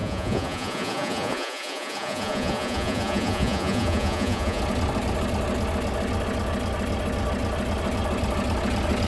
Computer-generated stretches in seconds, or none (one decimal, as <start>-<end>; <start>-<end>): 0.0-4.6